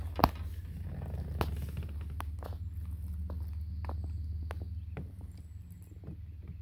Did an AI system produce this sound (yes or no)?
no